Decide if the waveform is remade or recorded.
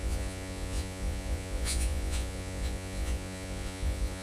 remade